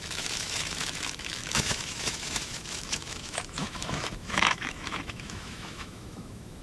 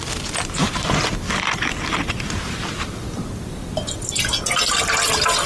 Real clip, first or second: second